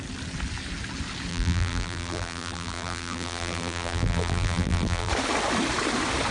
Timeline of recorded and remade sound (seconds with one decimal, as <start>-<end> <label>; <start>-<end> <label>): 0.0-1.3 recorded; 1.3-5.1 remade; 5.1-6.3 recorded